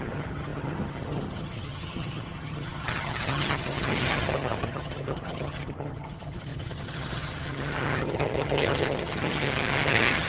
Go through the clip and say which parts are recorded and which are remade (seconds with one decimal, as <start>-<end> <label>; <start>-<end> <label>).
0.0-10.3 remade